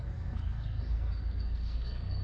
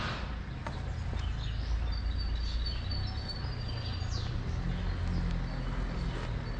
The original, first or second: second